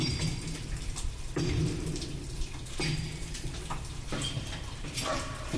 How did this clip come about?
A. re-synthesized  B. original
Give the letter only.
A